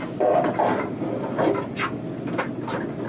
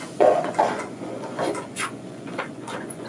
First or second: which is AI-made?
second